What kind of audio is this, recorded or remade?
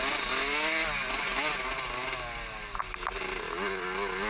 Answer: recorded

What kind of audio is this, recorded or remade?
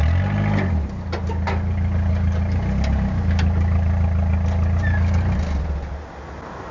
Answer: recorded